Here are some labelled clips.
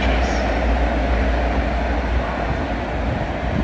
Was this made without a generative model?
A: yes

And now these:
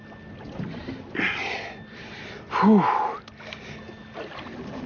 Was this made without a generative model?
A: yes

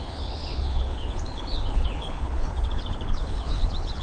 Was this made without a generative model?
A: no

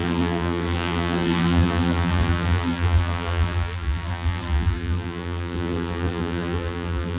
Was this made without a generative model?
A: no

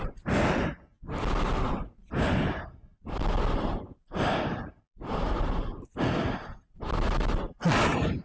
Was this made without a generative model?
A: yes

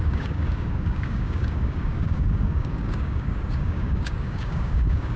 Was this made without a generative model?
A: no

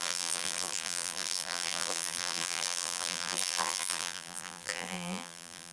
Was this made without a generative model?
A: no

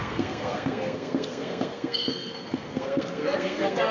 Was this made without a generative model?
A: no